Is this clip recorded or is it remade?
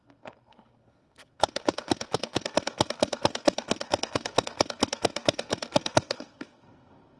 remade